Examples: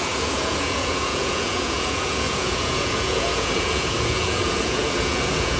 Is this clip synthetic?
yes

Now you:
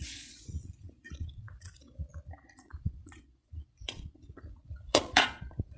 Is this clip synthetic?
yes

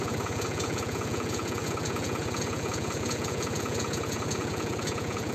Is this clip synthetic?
yes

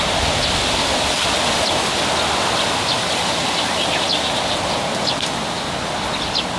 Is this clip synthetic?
no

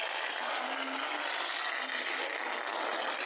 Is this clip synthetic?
no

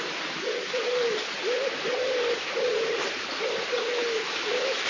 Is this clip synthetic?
no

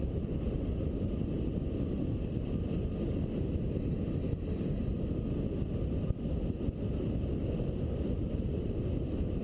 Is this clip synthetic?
no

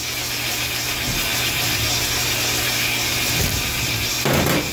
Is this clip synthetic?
no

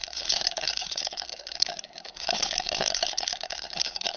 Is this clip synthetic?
yes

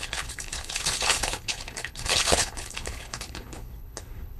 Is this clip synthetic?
yes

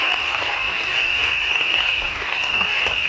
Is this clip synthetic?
yes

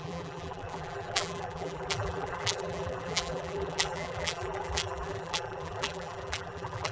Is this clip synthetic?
yes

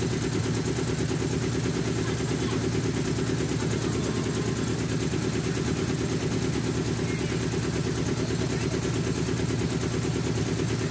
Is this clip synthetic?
no